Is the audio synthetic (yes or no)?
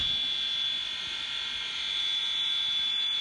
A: no